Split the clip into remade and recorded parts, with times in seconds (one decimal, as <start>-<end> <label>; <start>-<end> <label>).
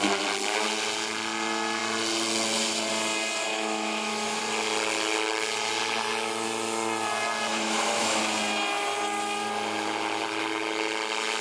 0.0-3.5 recorded; 3.5-4.4 remade; 4.4-7.5 recorded; 7.5-8.2 remade; 8.2-11.4 recorded